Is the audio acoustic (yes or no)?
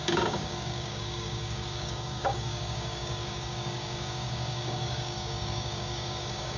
no